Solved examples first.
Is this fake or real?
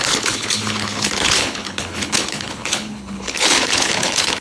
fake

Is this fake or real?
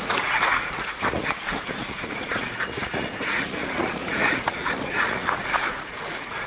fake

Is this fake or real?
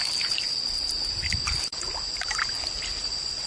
fake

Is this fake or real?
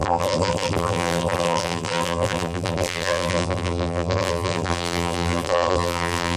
fake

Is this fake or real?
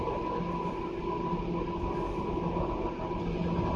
real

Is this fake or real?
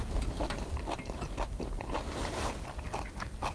fake